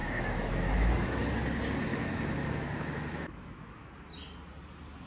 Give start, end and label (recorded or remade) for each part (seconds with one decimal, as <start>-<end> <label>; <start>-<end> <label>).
0.0-1.3 remade; 1.3-1.9 recorded; 1.9-3.9 remade; 3.9-5.1 recorded